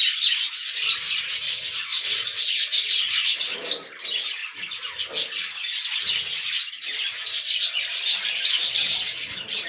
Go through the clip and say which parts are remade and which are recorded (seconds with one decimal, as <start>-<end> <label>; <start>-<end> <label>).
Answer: 0.0-1.9 recorded; 1.9-2.4 remade; 2.4-9.7 recorded